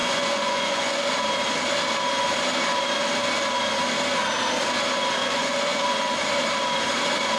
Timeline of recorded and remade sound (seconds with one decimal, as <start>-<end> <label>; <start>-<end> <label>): 0.0-1.1 remade; 1.1-5.2 recorded; 5.2-5.8 remade; 5.8-7.4 recorded